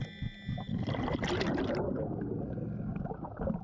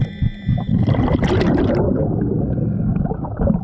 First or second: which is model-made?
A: second